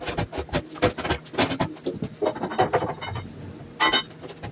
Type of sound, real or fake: real